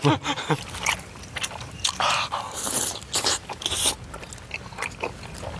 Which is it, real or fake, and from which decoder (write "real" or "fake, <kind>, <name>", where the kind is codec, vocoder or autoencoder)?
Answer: real